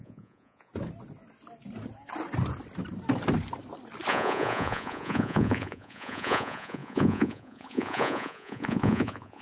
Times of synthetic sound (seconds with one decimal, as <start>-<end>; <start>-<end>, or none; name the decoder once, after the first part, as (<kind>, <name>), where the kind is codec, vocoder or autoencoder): 0.0-0.7 (vocoder, Vocos); 4.1-9.4